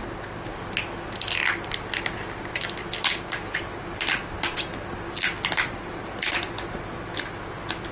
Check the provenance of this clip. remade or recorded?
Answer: recorded